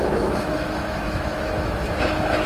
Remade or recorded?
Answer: remade